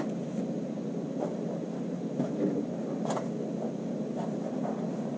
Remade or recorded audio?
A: recorded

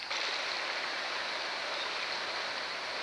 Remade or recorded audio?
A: recorded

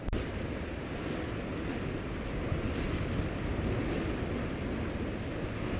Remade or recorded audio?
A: recorded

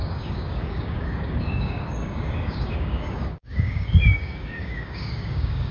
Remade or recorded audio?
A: remade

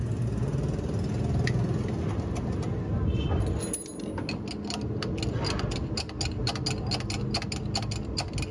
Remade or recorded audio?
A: recorded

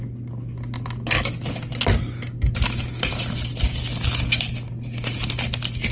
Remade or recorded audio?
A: recorded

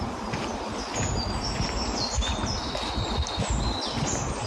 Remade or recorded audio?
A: recorded